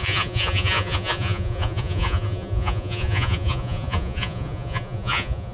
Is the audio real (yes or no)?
no